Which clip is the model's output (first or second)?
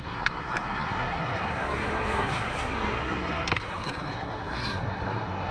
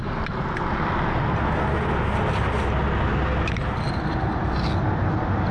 first